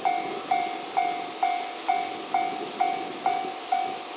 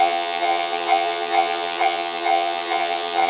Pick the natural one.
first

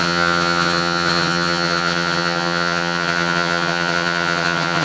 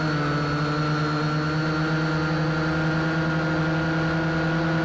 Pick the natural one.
second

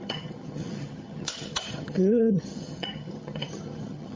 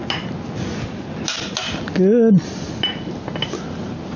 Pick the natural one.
second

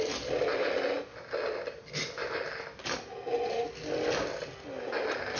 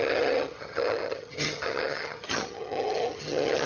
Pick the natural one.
first